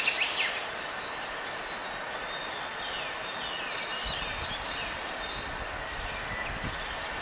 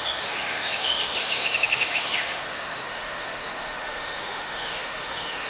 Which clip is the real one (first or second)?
first